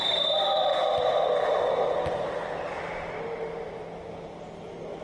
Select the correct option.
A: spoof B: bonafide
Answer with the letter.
B